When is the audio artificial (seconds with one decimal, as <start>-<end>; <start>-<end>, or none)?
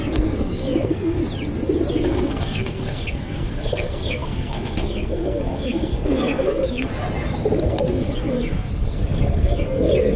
0.0-1.2; 1.9-6.9; 7.6-10.2